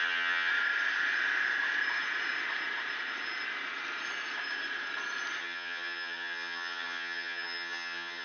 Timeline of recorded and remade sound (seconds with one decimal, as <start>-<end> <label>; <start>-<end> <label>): 0.0-0.5 remade; 0.5-5.4 recorded; 5.4-8.2 remade